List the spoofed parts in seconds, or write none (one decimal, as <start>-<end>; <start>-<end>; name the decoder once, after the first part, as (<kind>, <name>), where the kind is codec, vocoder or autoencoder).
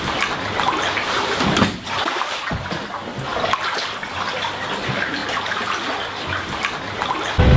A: none